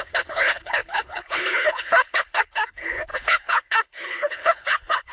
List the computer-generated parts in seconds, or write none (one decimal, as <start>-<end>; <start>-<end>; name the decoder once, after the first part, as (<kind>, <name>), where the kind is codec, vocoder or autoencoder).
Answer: 0.0-5.1 (codec, HILCodec)

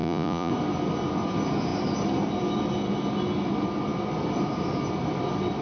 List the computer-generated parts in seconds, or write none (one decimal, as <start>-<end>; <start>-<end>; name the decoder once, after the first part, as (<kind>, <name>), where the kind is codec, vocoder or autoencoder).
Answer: 0.0-0.5 (vocoder, Vocos)

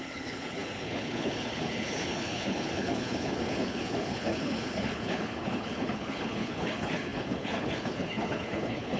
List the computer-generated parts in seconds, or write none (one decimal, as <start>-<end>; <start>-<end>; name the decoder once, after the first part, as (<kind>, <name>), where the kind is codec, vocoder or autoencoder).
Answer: 0.0-9.0 (codec, HILCodec)

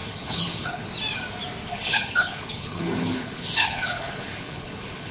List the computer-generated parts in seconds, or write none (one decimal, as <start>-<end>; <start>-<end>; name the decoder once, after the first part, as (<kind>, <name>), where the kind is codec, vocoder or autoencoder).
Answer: 0.0-0.9 (codec, HILCodec); 1.7-5.1

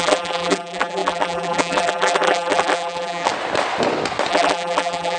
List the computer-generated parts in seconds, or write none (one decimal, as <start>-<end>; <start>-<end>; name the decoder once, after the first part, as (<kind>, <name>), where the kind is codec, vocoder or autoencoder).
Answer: 0.0-3.3 (vocoder, BigVGAN v2); 4.3-5.2

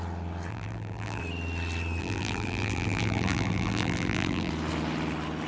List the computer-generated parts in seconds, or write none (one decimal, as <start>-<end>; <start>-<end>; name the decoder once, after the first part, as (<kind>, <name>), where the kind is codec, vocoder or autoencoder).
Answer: 0.5-1.2 (vocoder, BigVGAN v2); 2.0-4.5